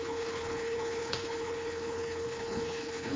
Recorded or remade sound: remade